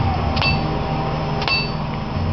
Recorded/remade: recorded